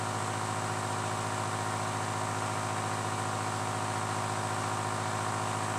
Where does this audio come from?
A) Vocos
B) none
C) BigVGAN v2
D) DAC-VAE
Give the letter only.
B